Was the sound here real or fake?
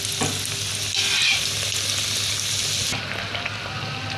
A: real